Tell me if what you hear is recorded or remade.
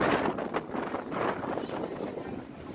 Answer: recorded